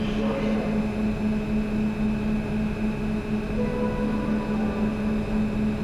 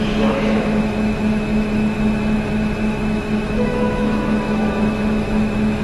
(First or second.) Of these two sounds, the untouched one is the first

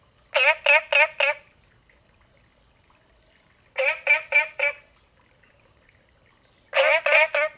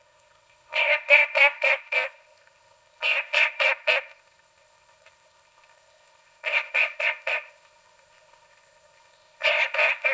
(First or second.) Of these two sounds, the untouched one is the first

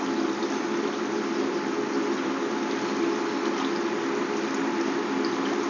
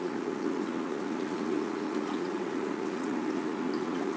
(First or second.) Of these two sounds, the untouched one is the first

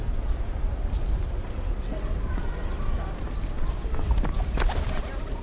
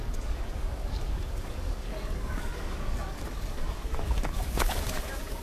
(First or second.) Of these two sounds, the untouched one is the first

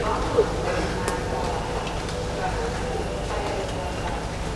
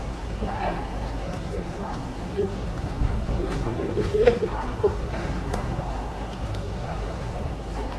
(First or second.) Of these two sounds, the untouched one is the first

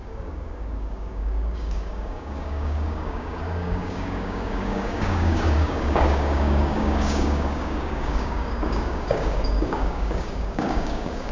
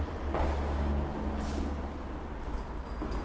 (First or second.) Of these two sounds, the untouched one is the second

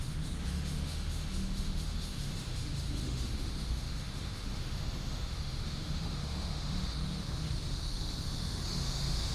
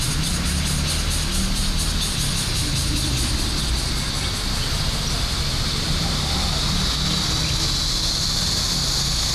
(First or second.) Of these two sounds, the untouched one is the second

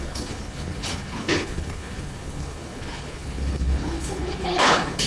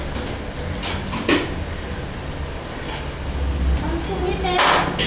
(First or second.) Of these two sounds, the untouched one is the second